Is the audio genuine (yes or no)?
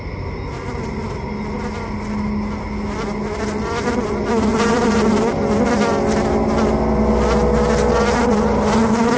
yes